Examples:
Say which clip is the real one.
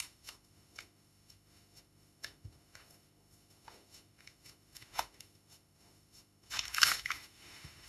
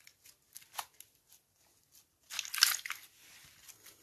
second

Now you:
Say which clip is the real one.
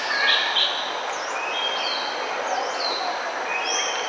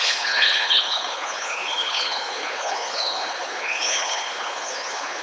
first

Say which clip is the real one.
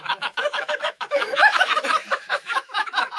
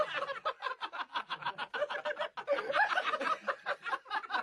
second